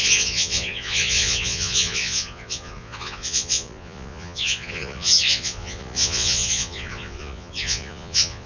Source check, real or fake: fake